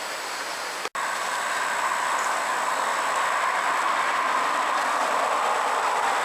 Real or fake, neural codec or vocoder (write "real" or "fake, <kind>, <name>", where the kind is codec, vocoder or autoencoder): real